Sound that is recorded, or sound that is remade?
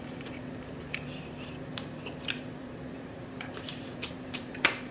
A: remade